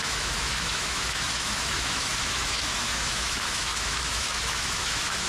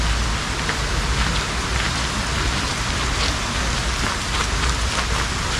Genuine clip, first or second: second